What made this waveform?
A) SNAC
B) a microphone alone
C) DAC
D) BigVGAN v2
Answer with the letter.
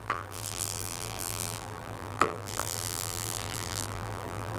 D